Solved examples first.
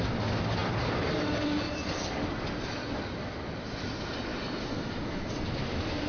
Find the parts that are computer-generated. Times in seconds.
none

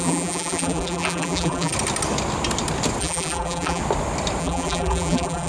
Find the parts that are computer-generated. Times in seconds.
0.0-1.7 (vocoder, BigVGAN v2); 3.0-3.8; 4.4-5.5

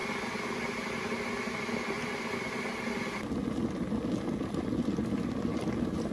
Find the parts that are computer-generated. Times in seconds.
2.3-2.7 (vocoder, BigVGAN v2); 5.5-6.1